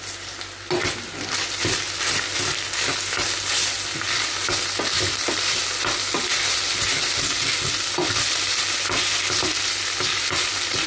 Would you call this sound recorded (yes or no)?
yes